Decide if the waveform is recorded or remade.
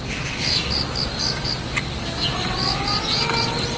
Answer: recorded